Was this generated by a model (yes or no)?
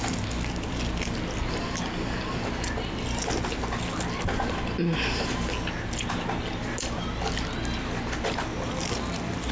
no